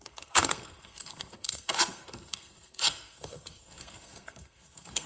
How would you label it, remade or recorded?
remade